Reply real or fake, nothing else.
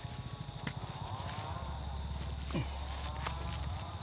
real